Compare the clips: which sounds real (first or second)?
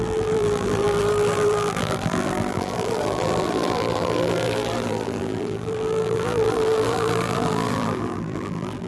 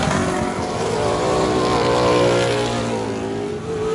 second